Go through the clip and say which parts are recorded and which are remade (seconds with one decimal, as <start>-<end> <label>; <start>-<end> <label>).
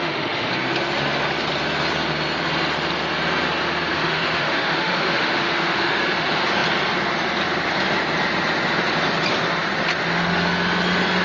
0.0-0.5 remade; 0.5-3.9 recorded; 3.9-6.0 remade; 6.0-11.2 recorded